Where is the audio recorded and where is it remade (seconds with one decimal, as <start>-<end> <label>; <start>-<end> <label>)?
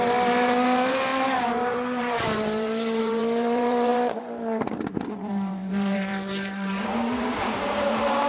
0.0-8.3 remade